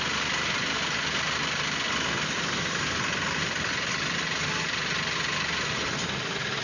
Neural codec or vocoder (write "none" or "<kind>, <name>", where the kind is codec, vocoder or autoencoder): none